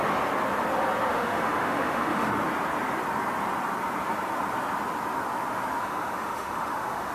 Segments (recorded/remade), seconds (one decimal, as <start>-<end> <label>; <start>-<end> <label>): 0.0-1.1 recorded; 1.1-2.3 remade; 2.3-5.8 recorded; 5.8-7.1 remade